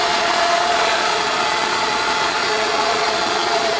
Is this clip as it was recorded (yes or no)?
no